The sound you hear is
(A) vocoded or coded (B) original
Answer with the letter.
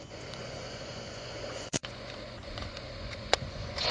A